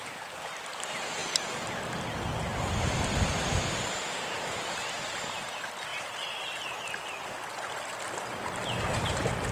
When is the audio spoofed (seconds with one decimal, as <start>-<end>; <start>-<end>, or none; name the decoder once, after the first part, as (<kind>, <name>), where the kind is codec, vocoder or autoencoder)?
none